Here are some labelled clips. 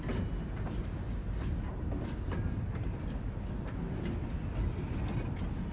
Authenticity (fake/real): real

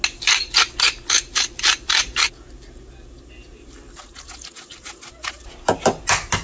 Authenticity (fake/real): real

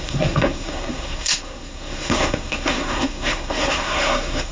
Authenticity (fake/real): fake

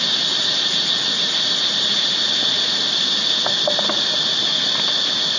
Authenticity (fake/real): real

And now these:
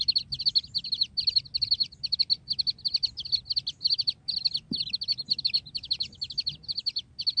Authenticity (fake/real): real